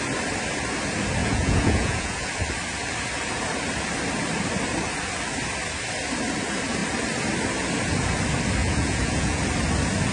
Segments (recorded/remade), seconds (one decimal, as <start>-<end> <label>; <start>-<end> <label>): 0.0-1.2 recorded; 1.2-2.3 remade; 2.3-8.6 recorded; 8.6-9.4 remade; 9.4-10.1 recorded